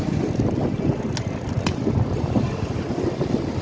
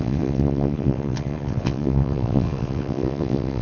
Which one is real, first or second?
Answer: first